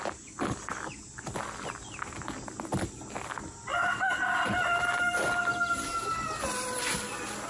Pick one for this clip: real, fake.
real